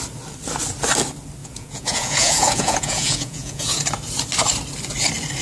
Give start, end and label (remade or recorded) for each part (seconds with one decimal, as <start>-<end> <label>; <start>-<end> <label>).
0.0-1.4 recorded; 1.4-3.8 remade; 3.8-5.4 recorded